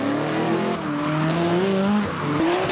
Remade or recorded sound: recorded